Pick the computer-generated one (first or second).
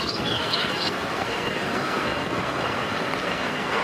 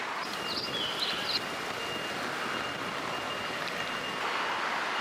first